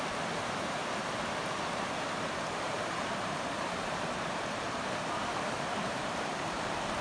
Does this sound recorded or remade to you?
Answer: remade